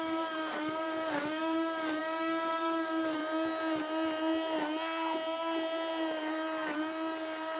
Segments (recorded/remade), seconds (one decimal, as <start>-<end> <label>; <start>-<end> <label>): 0.0-3.2 remade; 3.2-7.6 recorded